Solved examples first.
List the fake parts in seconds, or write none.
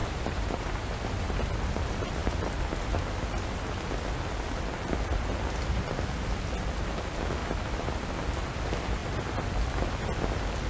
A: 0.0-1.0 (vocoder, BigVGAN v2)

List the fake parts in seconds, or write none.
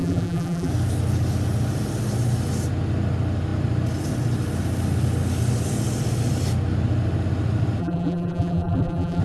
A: 0.0-0.7 (vocoder, BigVGAN v2); 7.8-9.2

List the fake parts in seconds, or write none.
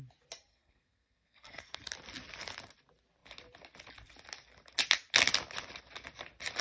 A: 0.5-1.8 (codec, SNAC)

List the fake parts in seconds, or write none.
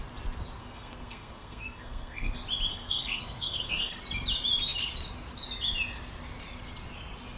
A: 0.6-2.3 (codec, SNAC); 2.7-4.0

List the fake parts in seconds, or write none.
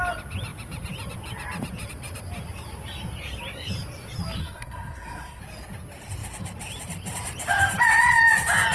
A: 4.4-5.4 (codec, SNAC)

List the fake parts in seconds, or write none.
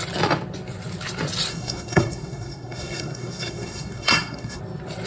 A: 1.5-4.6 (codec, SNAC)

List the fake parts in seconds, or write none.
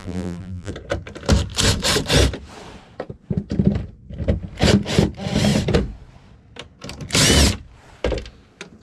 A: 0.0-0.7 (vocoder, BigVGAN v2)